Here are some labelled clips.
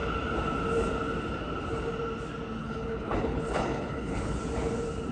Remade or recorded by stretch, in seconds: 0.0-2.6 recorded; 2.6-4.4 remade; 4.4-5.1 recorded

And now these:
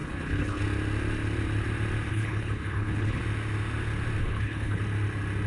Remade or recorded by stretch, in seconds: 0.0-0.6 remade; 0.6-2.1 recorded; 2.1-3.2 remade; 3.2-4.2 recorded; 4.2-4.8 remade; 4.8-5.5 recorded

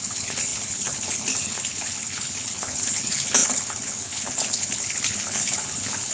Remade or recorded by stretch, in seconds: 0.0-6.1 remade

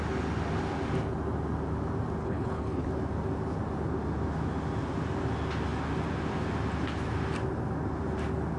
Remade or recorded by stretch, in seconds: 0.0-2.2 recorded; 2.2-2.9 remade; 2.9-8.6 recorded

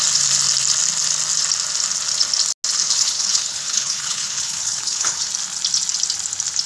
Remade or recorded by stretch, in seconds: 0.0-2.8 recorded; 2.8-5.3 remade; 5.3-6.7 recorded

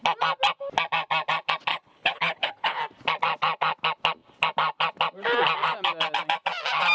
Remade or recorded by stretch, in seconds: 0.0-1.7 recorded; 1.7-2.8 remade; 2.8-6.9 recorded

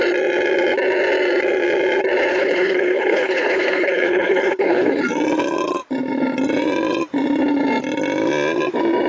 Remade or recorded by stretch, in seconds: 0.0-2.3 recorded; 2.3-5.0 remade; 5.0-9.1 recorded

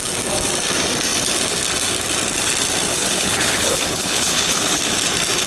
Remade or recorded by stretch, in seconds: 0.0-2.9 recorded; 2.9-4.8 remade; 4.8-5.5 recorded